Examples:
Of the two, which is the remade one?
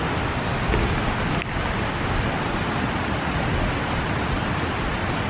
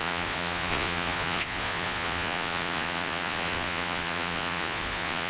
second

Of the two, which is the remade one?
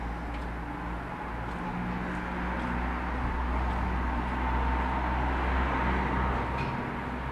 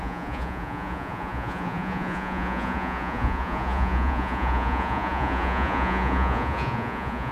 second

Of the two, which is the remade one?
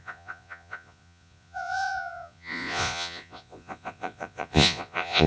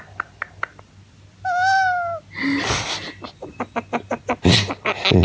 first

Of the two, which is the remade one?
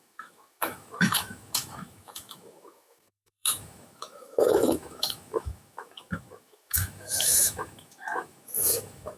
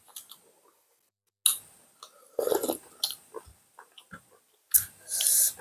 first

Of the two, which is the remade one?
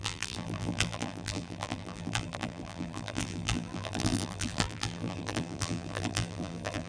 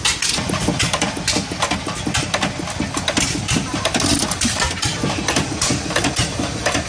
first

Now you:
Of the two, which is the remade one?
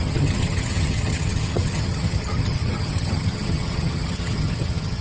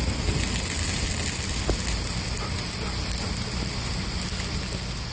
first